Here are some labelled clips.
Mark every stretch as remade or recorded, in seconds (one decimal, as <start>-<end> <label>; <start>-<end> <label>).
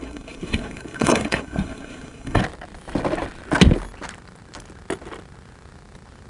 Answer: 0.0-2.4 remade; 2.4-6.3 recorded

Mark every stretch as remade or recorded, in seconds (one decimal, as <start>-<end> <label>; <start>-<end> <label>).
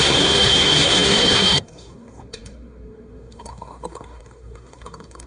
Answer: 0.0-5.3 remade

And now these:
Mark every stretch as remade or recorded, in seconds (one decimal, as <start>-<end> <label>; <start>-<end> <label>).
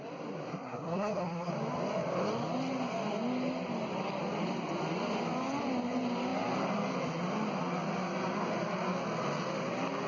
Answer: 0.0-0.5 recorded; 0.5-1.5 remade; 1.5-10.1 recorded